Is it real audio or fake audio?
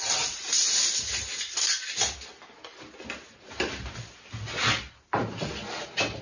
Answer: real